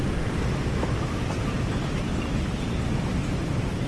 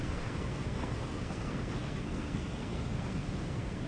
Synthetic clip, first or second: second